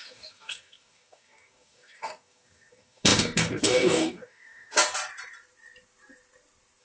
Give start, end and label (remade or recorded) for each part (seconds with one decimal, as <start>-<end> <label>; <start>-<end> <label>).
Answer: 0.0-4.7 remade; 4.7-6.8 recorded